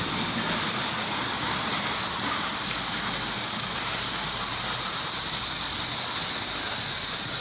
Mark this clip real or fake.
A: real